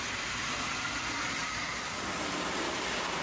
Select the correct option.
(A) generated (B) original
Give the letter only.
A